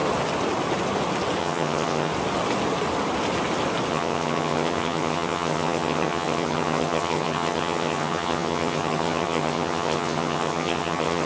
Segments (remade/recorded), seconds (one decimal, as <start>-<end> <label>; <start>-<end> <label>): 0.0-1.4 recorded; 1.4-2.1 remade; 2.1-3.9 recorded; 3.9-11.3 remade